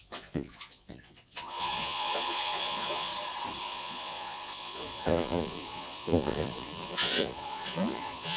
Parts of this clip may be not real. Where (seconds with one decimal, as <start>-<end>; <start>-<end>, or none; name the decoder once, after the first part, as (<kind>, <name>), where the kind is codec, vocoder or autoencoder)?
0.0-3.1 (vocoder, Vocos); 3.6-8.4